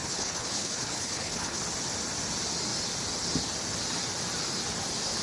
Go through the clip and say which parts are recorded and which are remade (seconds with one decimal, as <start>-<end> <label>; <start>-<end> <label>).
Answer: 0.0-1.6 remade; 1.6-5.2 recorded